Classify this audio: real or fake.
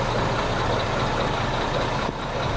real